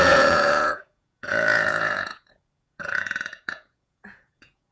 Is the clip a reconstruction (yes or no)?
yes